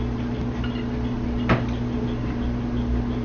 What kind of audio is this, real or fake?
real